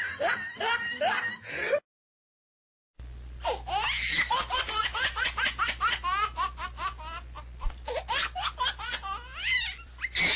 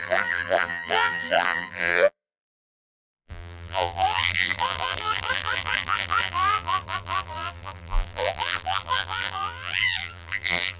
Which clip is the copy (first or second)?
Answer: second